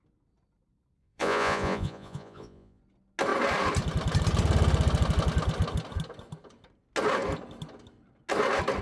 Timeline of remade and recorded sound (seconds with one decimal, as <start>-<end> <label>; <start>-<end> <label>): 0.0-1.0 recorded; 1.0-2.8 remade; 2.8-8.8 recorded